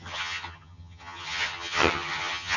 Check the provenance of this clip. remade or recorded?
remade